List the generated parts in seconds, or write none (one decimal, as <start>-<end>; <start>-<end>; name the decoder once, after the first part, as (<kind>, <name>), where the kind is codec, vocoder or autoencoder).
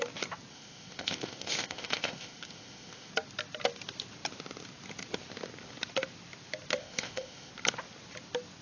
0.5-3.1 (codec, ZipCodec); 6.8-7.5